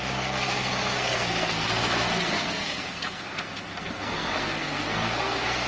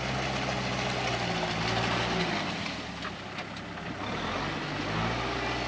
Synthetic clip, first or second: first